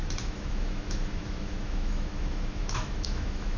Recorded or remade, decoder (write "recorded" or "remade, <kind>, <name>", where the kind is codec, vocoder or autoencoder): remade, autoencoder, DAC-VAE